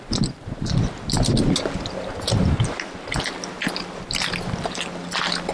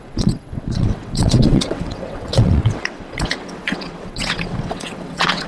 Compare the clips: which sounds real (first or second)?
first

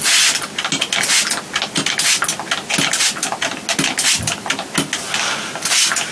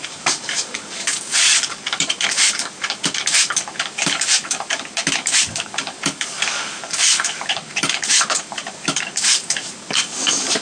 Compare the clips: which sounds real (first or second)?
first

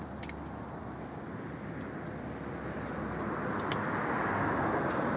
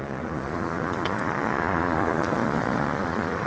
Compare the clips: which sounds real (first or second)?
first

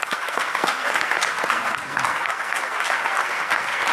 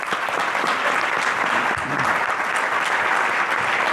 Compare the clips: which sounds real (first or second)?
second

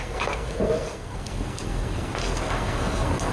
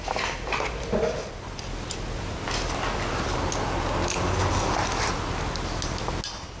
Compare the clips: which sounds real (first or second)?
second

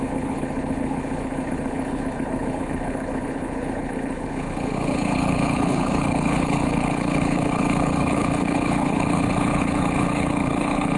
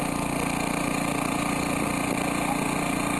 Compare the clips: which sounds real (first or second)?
second